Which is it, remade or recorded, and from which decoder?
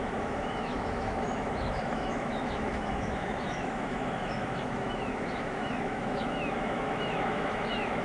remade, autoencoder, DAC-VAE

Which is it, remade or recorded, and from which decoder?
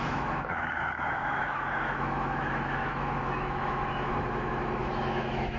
remade, autoencoder, DAC-VAE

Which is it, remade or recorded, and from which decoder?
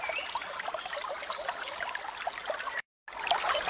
recorded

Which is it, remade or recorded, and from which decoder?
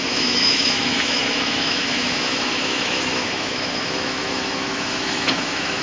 remade, autoencoder, DAC-VAE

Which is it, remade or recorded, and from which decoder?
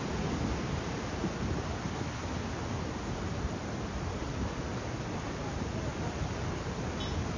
recorded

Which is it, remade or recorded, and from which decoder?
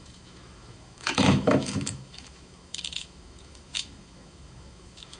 remade, autoencoder, DAC-VAE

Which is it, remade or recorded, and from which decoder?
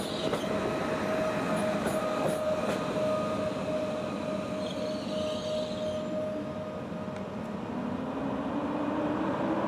recorded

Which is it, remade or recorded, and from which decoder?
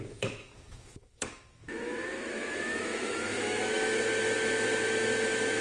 remade, autoencoder, DAC-VAE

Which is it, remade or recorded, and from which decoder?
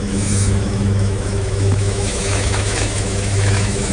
remade, autoencoder, DAC-VAE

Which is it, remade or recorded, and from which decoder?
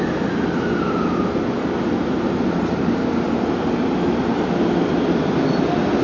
recorded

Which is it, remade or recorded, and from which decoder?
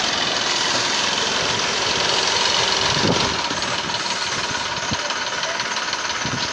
recorded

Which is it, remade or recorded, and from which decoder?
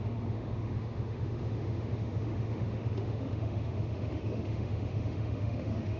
remade, autoencoder, DAC-VAE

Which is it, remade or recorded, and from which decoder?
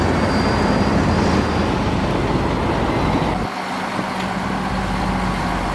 recorded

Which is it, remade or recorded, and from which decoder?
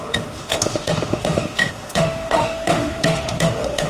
remade, autoencoder, DAC-VAE